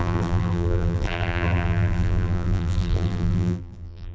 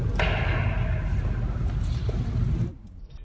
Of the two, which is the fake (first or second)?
first